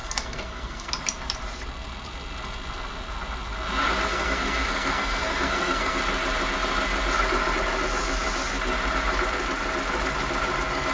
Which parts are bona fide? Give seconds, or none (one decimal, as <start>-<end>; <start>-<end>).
0.9-4.1; 6.0-10.9